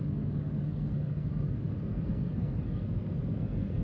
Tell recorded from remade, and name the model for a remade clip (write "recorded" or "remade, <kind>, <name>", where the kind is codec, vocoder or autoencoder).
remade, codec, SNAC